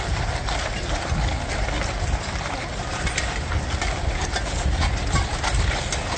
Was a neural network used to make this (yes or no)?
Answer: no